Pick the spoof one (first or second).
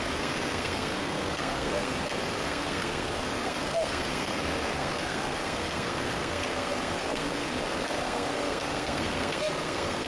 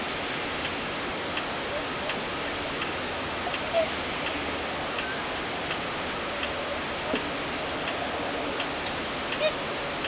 first